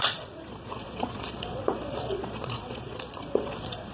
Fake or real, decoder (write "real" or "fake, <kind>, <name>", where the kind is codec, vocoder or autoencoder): fake, vocoder, Vocos